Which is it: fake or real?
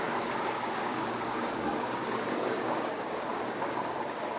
fake